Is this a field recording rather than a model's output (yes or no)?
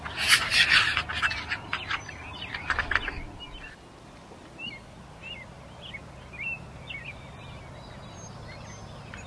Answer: yes